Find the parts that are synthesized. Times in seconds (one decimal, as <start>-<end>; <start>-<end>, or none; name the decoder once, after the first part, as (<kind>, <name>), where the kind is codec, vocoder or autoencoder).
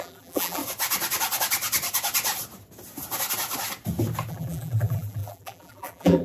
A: 0.0-0.6 (vocoder, BigVGAN v2); 4.3-6.2